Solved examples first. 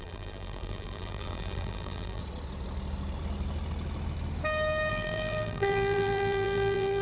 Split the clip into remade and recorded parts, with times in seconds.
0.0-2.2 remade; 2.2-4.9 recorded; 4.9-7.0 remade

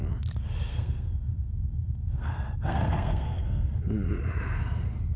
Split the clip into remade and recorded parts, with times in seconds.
0.0-0.7 recorded; 0.7-3.7 remade; 3.7-5.2 recorded